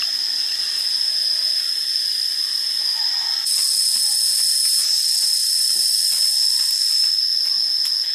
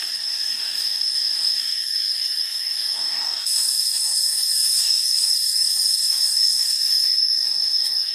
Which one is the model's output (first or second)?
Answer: second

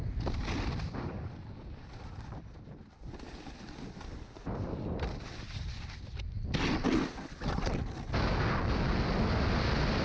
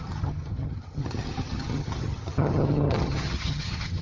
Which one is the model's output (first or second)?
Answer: second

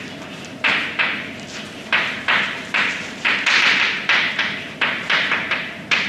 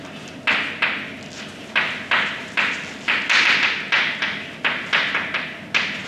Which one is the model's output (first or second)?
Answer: first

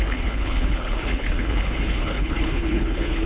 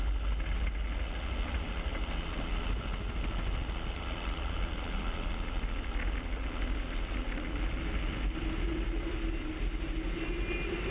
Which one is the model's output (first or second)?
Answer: first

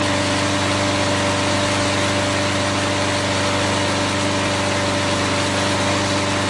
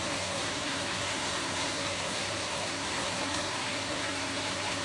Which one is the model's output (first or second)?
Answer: second